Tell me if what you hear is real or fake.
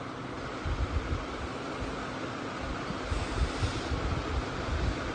real